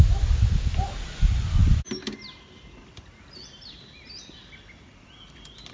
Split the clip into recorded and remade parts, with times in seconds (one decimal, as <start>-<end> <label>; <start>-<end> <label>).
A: 0.0-5.7 recorded